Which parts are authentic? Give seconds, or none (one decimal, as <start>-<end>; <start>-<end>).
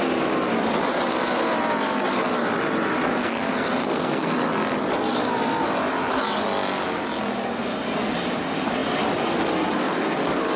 0.0-3.2; 4.3-10.6